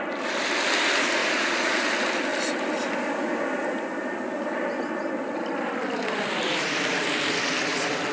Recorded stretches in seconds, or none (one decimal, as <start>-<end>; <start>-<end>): 0.0-1.2; 1.9-8.1